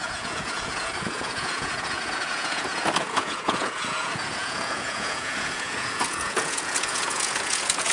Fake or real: fake